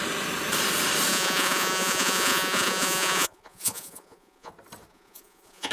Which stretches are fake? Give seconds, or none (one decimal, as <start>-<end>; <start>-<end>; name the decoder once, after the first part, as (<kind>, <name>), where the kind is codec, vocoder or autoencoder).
1.1-4.5 (vocoder, Vocos); 4.9-5.7